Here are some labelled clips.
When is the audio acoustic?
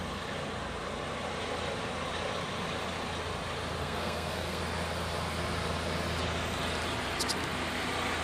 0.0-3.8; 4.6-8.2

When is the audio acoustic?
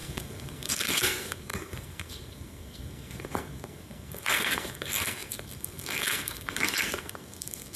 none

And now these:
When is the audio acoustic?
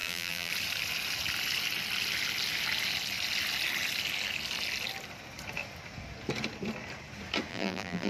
0.5-7.5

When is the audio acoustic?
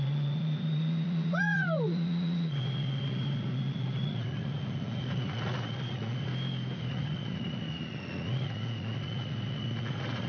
6.3-6.9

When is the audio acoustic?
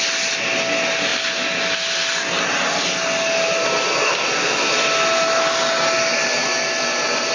0.0-7.3